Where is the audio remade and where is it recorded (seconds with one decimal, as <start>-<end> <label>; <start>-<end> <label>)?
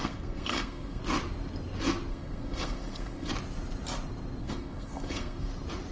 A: 0.0-1.0 remade; 1.0-2.1 recorded; 2.1-3.3 remade; 3.3-4.4 recorded; 4.4-5.5 remade; 5.5-5.9 recorded